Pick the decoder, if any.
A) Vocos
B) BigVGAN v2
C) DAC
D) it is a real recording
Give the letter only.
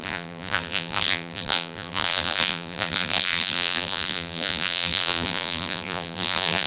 B